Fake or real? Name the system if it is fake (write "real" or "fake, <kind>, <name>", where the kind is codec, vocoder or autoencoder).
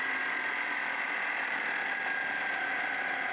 real